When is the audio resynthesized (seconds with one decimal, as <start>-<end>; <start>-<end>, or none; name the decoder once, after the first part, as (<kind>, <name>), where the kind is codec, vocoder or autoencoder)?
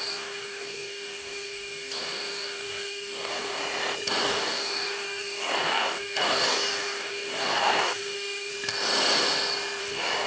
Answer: 0.0-3.6 (codec, DAC); 4.2-8.5; 9.8-10.3